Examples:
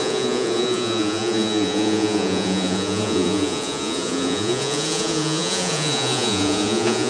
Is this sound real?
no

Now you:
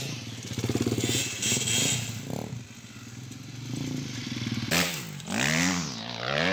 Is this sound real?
yes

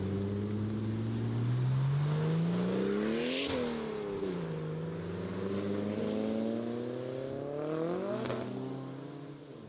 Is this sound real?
yes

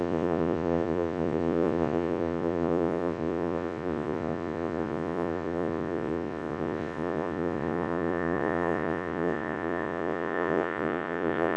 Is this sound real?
no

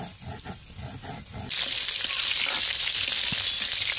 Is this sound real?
yes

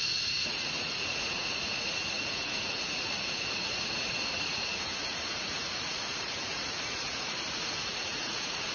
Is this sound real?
no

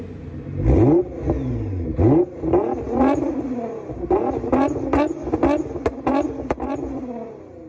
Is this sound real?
yes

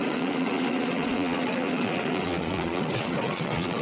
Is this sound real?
no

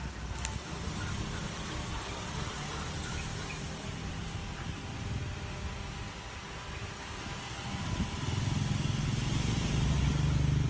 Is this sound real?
yes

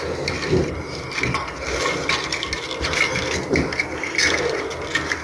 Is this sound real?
yes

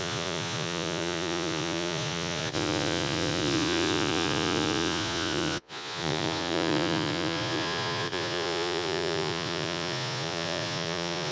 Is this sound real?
no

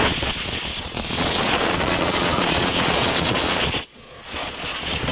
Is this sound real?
no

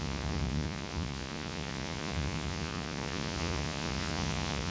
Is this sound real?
no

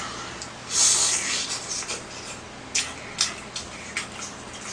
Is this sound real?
yes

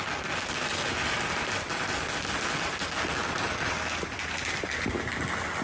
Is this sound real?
yes